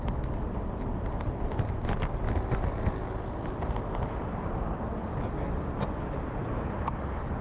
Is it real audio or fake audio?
real